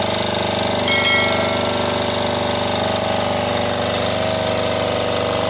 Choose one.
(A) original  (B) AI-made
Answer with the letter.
A